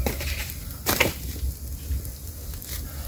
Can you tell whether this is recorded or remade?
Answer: recorded